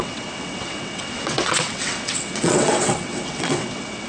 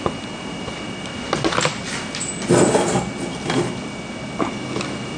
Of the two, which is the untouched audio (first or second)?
second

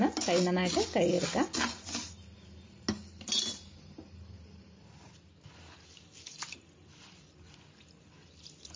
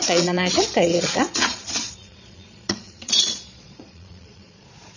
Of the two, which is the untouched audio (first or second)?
first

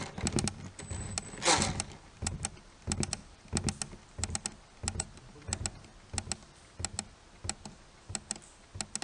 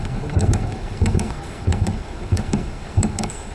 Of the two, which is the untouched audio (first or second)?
first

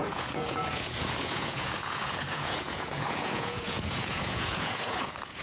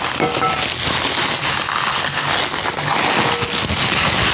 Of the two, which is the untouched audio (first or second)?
second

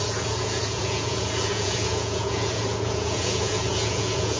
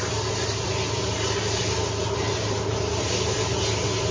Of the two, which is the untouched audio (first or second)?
second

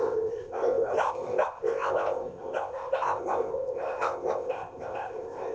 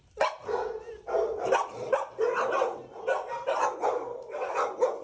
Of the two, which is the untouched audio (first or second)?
second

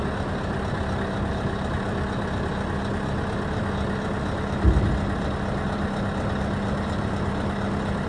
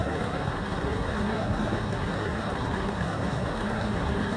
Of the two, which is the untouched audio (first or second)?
first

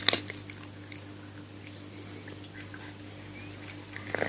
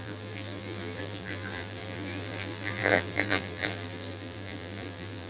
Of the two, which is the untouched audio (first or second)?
first